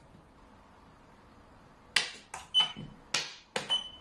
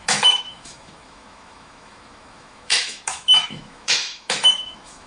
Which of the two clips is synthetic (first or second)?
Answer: second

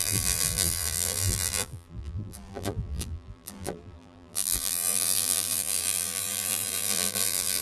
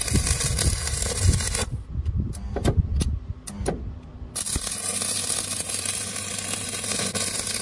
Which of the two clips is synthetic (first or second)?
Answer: first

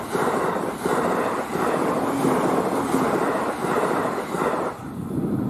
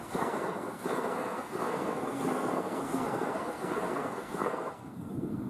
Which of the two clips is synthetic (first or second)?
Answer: second